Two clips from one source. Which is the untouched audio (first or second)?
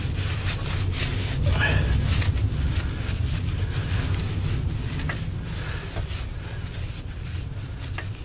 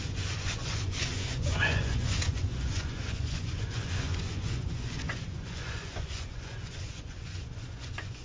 first